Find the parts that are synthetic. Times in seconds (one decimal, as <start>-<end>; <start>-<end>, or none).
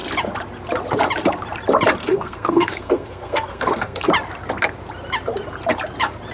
2.0-4.1